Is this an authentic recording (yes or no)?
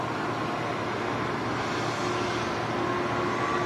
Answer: yes